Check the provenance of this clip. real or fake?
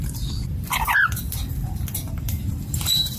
fake